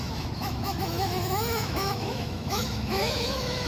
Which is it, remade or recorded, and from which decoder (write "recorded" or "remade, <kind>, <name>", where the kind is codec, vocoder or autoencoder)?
remade, autoencoder, DAC-VAE